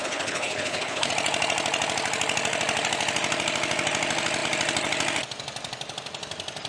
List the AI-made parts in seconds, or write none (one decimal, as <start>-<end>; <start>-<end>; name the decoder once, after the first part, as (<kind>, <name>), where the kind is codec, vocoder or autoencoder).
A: 0.0-1.1 (codec, HILCodec)